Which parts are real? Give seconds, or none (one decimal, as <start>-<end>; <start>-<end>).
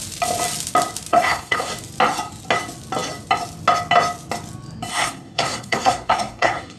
0.0-1.1; 1.7-4.9